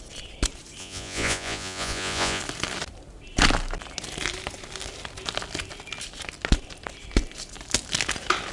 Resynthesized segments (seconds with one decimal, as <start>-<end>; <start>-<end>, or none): 0.8-2.4